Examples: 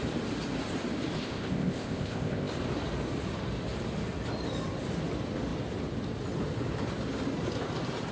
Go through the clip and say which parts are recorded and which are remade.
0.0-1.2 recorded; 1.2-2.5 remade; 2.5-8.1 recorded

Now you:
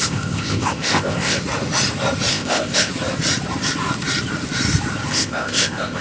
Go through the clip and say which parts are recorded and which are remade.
0.0-1.4 remade; 1.4-2.3 recorded; 2.3-2.9 remade; 2.9-5.1 recorded; 5.1-6.0 remade

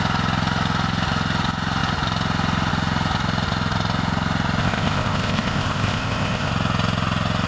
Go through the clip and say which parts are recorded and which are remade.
0.0-4.6 recorded; 4.6-6.5 remade; 6.5-7.5 recorded

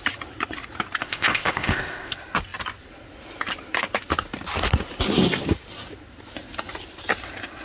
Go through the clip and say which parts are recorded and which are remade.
0.0-1.0 recorded; 1.0-2.1 remade; 2.1-7.6 recorded

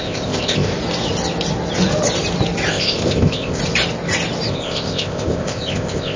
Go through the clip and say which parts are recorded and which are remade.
0.0-0.7 remade; 0.7-2.7 recorded; 2.7-3.6 remade; 3.6-4.5 recorded; 4.5-6.2 remade

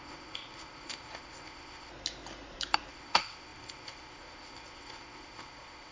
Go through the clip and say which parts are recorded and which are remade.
0.0-1.9 remade; 1.9-2.9 recorded; 2.9-5.9 remade

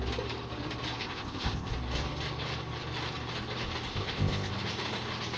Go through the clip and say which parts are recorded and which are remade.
0.0-1.0 recorded; 1.0-1.7 remade; 1.7-3.9 recorded; 3.9-4.5 remade; 4.5-5.4 recorded

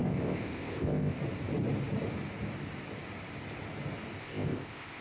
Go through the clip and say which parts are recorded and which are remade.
0.0-1.2 remade; 1.2-4.2 recorded; 4.2-5.0 remade